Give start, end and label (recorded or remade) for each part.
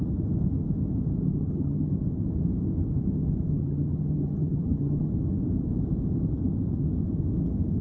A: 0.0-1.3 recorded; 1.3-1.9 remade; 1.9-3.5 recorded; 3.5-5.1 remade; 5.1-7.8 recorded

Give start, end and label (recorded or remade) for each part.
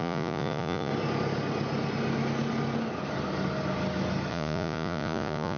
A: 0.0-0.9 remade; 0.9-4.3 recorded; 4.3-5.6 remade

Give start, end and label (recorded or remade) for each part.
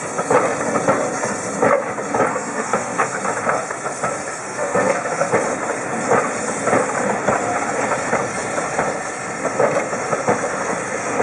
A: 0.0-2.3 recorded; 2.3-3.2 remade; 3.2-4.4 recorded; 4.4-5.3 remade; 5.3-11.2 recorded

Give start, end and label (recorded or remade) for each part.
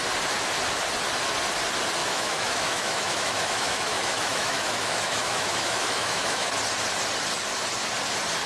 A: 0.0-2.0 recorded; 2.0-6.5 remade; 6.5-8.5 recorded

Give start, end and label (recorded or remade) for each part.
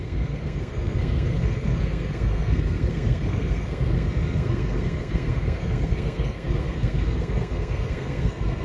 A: 0.0-8.6 remade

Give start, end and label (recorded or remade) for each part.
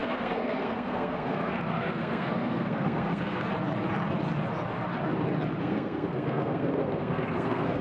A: 0.0-3.5 remade; 3.5-5.6 recorded; 5.6-7.8 remade